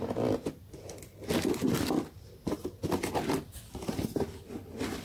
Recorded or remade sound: recorded